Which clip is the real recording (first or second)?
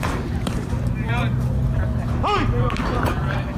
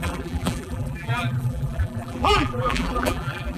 first